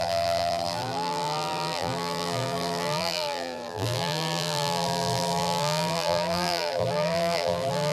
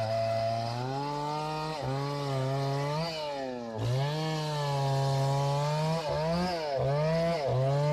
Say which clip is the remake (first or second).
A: first